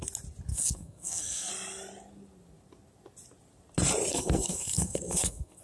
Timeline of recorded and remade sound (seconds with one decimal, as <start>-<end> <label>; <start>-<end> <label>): 0.0-0.5 recorded; 0.5-1.5 remade; 1.5-4.1 recorded; 4.1-5.6 remade